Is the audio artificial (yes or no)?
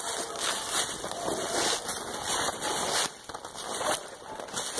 no